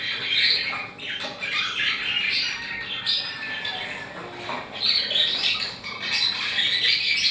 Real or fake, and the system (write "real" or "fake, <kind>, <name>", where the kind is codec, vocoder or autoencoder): real